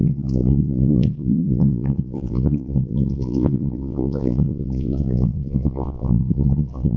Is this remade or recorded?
remade